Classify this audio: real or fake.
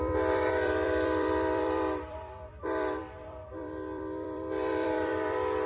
fake